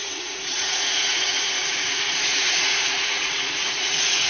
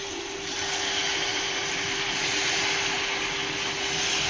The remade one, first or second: first